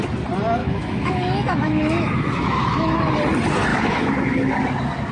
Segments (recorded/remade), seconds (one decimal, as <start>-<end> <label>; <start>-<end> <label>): 0.0-0.6 recorded; 0.6-3.1 remade; 3.1-3.7 recorded; 3.7-4.5 remade; 4.5-5.1 recorded

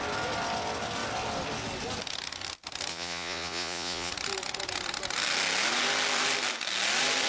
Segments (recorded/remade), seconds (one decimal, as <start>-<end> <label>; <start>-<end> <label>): 0.0-2.9 recorded; 2.9-4.1 remade; 4.1-7.3 recorded

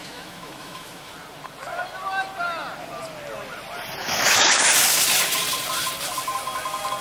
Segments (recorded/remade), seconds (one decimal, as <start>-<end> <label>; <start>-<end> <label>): 0.0-1.1 remade; 1.1-4.0 recorded; 4.0-4.7 remade; 4.7-7.0 recorded